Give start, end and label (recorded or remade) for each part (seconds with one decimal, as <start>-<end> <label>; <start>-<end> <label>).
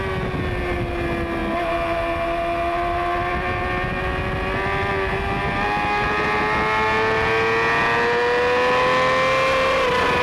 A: 0.0-10.2 recorded